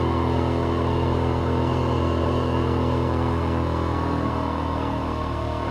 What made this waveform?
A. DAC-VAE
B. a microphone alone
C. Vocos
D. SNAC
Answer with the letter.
D